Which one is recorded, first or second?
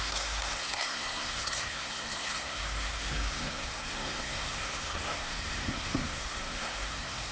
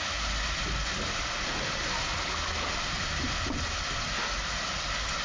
second